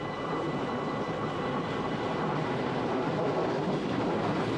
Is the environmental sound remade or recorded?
recorded